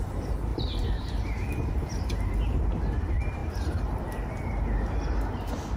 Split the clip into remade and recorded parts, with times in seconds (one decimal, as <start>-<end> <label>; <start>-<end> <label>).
0.0-0.5 recorded; 0.5-2.6 remade; 2.6-3.4 recorded; 3.4-4.0 remade; 4.0-5.8 recorded